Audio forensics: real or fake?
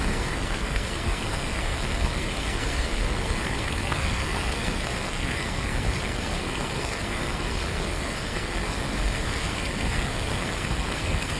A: fake